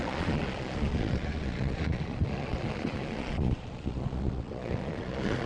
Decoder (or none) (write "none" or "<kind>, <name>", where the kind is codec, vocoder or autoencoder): vocoder, Vocos